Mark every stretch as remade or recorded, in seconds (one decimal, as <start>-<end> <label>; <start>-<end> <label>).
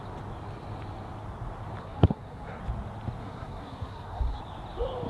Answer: 0.0-1.8 recorded; 1.8-2.6 remade; 2.6-3.2 recorded; 3.2-4.4 remade; 4.4-5.1 recorded